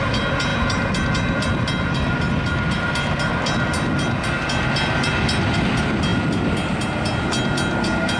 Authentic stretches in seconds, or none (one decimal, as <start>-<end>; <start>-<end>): 0.0-8.2